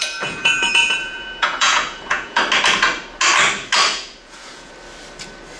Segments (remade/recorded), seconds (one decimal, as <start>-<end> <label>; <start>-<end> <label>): 0.0-2.4 remade; 2.4-3.9 recorded; 3.9-4.7 remade; 4.7-5.6 recorded